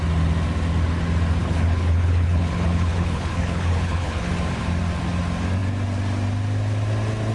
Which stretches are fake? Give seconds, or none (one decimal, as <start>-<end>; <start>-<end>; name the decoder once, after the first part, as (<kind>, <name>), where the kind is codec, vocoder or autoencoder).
1.4-4.3 (codec, HILCodec)